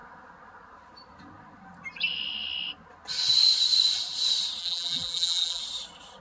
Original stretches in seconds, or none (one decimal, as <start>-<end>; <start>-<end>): 0.0-4.6; 5.6-6.2